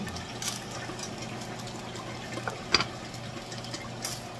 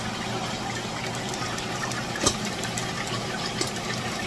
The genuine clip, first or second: first